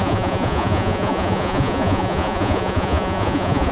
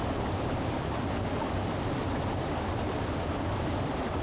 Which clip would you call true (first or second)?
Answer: second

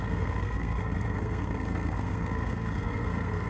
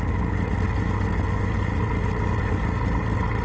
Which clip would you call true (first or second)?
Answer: second